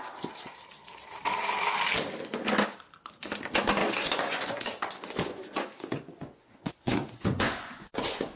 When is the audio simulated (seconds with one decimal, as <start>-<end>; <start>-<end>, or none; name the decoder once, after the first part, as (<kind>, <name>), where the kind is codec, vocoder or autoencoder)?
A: 3.8-8.4 (vocoder, Vocos)